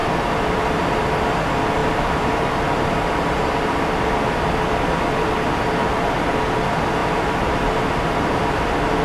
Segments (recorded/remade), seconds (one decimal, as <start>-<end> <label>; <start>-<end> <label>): 0.0-0.6 remade; 0.6-1.8 recorded; 1.8-3.9 remade; 3.9-5.8 recorded; 5.8-6.4 remade; 6.4-7.0 recorded; 7.0-8.4 remade; 8.4-9.0 recorded